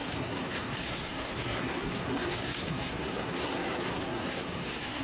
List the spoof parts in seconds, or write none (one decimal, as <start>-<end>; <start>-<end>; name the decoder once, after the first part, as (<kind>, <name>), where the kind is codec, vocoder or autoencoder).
0.0-5.0 (codec, SNAC)